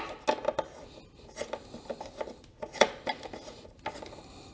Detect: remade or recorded recorded